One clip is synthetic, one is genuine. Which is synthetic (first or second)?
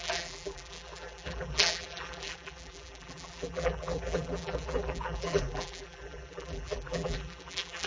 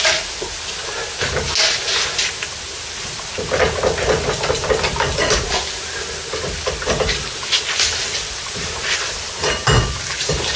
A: first